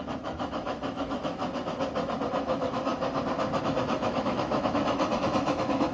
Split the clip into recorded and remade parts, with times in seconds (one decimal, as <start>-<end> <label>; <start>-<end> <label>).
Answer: 0.0-1.4 remade; 1.4-2.3 recorded; 2.3-2.9 remade; 2.9-3.6 recorded; 3.6-5.9 remade